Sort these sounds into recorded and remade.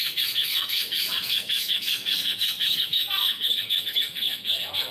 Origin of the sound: remade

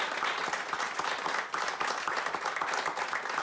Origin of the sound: recorded